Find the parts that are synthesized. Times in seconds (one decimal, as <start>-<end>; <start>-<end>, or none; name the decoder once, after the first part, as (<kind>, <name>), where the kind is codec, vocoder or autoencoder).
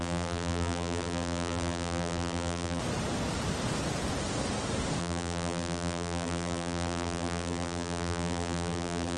0.0-2.8 (vocoder, BigVGAN v2); 5.0-9.2